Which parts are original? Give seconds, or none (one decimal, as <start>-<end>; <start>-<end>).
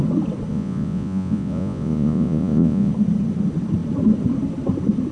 0.0-0.5; 2.9-5.1